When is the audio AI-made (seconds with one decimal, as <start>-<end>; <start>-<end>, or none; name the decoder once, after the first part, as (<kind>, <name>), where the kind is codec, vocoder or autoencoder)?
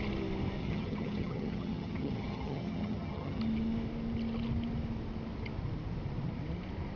0.6-3.4 (vocoder, HiFi-GAN)